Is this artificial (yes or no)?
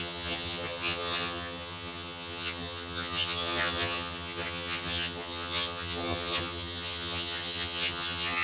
yes